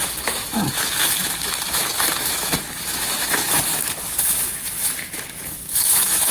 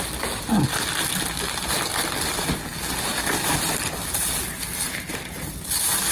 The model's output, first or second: first